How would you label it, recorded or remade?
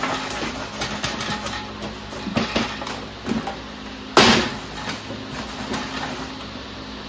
recorded